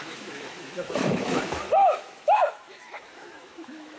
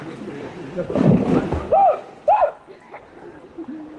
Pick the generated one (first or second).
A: first